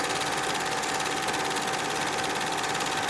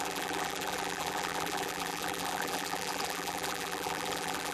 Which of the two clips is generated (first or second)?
second